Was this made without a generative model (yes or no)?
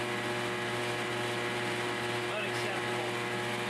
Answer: yes